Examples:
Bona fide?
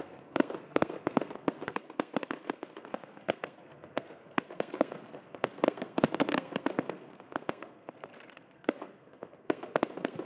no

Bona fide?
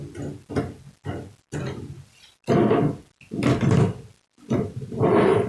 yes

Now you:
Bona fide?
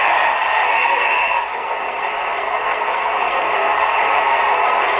no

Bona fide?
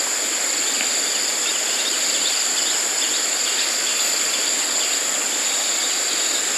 yes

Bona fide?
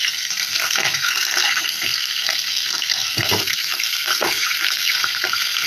no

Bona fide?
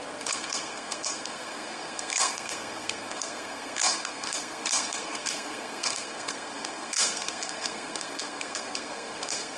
no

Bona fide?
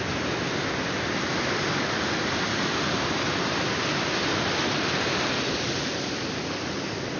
yes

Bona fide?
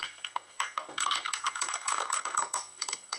no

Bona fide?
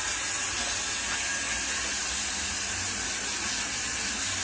yes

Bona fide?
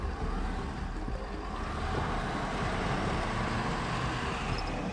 yes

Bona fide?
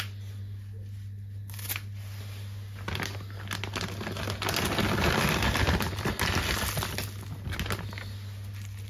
yes